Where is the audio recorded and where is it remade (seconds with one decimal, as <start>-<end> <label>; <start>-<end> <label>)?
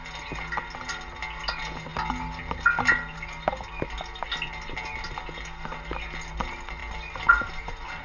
0.0-8.0 recorded